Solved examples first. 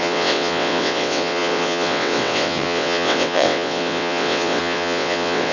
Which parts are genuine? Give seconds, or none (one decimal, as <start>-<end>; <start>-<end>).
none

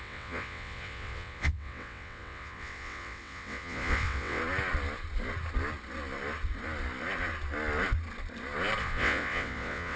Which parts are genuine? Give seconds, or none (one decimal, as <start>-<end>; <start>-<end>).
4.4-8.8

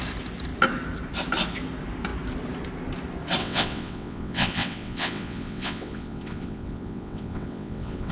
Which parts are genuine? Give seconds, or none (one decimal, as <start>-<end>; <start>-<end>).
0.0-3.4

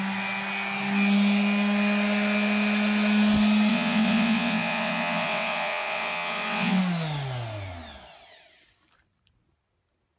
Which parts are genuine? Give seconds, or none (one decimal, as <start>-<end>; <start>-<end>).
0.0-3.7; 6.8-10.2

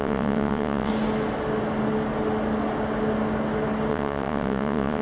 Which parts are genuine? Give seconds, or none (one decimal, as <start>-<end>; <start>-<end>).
0.9-3.9

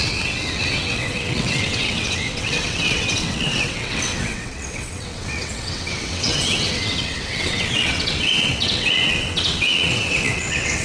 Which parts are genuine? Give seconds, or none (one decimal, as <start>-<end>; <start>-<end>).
none

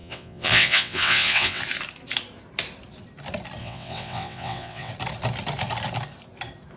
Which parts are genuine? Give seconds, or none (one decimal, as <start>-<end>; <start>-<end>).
1.6-3.6; 4.9-6.8